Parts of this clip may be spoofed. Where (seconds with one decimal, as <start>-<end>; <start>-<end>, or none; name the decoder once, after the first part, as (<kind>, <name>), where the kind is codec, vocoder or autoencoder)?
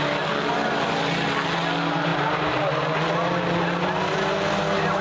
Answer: none